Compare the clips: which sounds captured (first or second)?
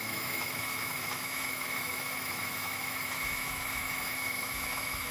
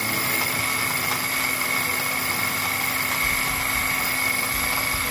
second